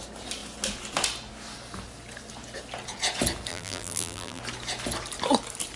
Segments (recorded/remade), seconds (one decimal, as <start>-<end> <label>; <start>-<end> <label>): 0.0-3.5 recorded; 3.5-4.4 remade; 4.4-5.8 recorded